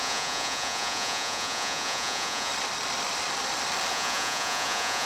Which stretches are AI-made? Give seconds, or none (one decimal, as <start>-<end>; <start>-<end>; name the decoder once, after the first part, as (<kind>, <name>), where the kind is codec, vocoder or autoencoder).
0.0-2.5 (vocoder, Vocos); 3.9-5.1